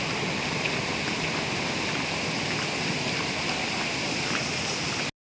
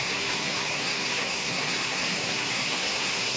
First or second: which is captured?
first